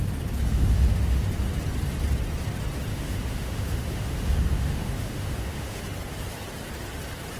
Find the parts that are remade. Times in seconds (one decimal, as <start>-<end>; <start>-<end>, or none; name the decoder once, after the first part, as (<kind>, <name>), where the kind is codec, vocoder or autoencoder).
0.5-1.2 (autoencoder, DAC-VAE); 2.9-5.8